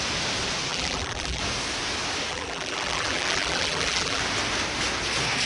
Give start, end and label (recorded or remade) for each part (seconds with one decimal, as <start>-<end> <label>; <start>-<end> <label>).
0.0-0.7 recorded; 0.7-1.4 remade; 1.4-2.3 recorded; 2.3-4.2 remade; 4.2-5.5 recorded